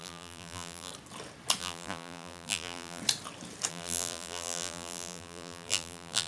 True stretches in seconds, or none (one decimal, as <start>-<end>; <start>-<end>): 0.9-1.6; 3.0-3.7